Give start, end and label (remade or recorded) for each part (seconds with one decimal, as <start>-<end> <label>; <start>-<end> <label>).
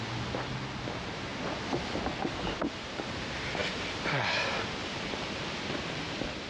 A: 0.0-1.3 recorded; 1.3-2.2 remade; 2.2-3.6 recorded; 3.6-4.3 remade; 4.3-4.8 recorded; 4.8-6.5 remade